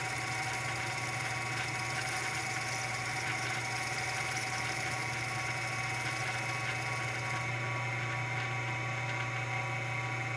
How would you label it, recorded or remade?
recorded